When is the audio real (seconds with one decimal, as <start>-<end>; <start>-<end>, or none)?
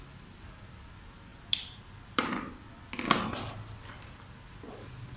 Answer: 0.0-1.3; 2.5-5.2